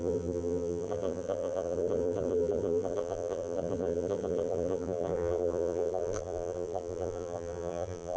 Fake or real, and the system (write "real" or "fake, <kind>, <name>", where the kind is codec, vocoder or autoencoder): fake, vocoder, BigVGAN v2